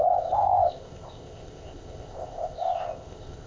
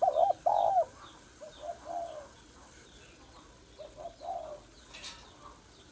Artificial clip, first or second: first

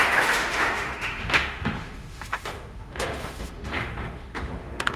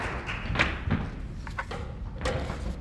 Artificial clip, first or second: first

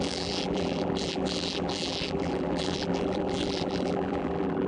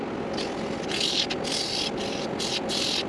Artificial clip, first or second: first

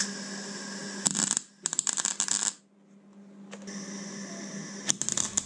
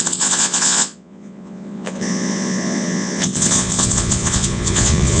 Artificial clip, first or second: second